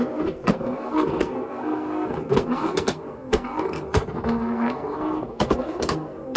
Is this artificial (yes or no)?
yes